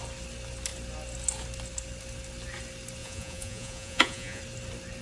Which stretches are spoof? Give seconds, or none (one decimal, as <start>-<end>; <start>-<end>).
3.0-4.4